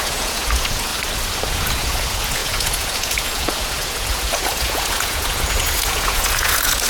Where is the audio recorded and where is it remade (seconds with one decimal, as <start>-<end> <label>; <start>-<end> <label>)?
0.0-0.9 remade; 0.9-1.5 recorded; 1.5-6.9 remade